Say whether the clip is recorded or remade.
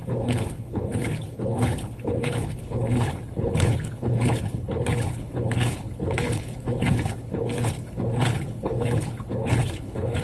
remade